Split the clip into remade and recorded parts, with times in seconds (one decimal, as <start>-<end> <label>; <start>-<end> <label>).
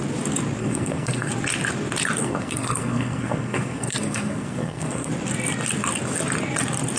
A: 0.0-0.6 recorded; 0.6-1.3 remade; 1.3-2.2 recorded; 2.2-5.1 remade; 5.1-7.0 recorded